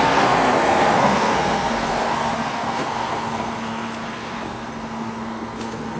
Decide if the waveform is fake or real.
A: fake